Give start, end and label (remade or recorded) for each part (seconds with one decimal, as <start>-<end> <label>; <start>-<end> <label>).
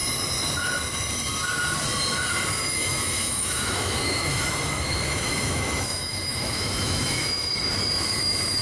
0.0-2.6 recorded; 2.6-7.5 remade; 7.5-8.2 recorded; 8.2-8.6 remade